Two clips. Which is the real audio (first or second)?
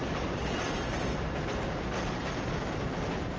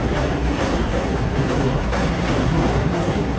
first